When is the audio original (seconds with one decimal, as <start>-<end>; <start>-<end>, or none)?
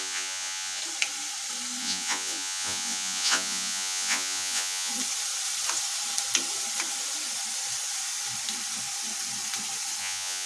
0.8-1.8; 4.9-10.0